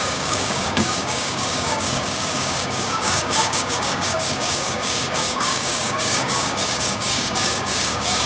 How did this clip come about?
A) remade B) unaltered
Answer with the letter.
A